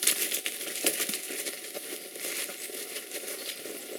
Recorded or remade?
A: remade